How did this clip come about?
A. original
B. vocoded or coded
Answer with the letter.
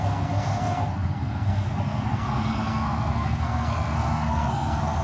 B